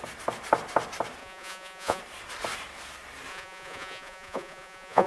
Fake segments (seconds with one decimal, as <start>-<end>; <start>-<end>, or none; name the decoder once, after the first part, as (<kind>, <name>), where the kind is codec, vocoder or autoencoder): 1.2-2.0 (vocoder, Vocos); 3.3-5.1